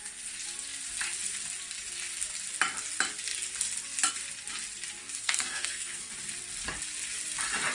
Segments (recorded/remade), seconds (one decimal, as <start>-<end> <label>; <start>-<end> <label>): 0.0-5.0 recorded; 5.0-6.1 remade; 6.1-7.7 recorded